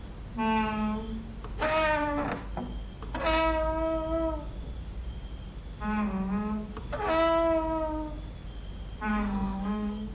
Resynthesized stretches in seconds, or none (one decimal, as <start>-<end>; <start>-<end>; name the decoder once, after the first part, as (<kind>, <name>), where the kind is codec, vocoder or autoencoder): 9.1-10.1 (codec, SNAC)